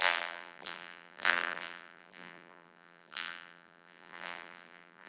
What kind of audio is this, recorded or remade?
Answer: remade